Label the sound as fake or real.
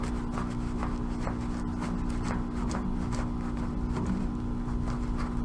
real